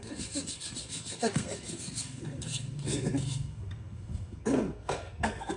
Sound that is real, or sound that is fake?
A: fake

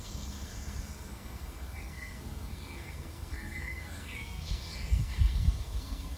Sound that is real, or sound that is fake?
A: fake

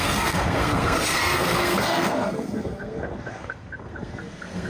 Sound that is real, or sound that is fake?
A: fake